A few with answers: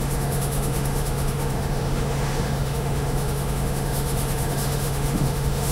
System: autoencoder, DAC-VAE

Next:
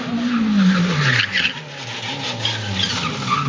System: none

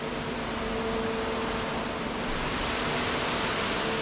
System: none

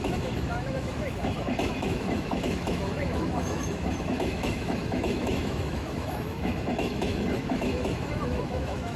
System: autoencoder, DAC-VAE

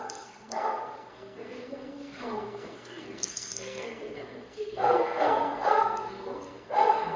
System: codec, SNAC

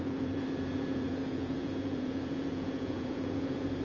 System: vocoder, Vocos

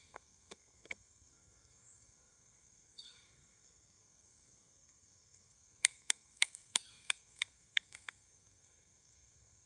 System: codec, SNAC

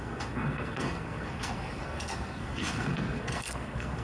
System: codec, SNAC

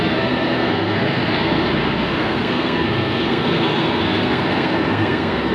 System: codec, SNAC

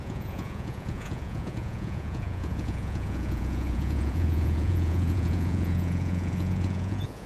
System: vocoder, Vocos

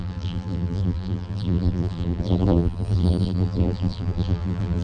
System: vocoder, BigVGAN v2